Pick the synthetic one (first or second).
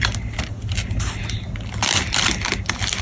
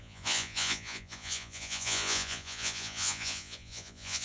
second